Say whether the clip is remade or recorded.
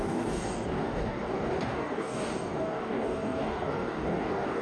remade